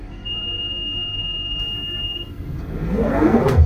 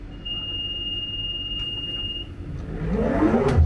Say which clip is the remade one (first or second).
first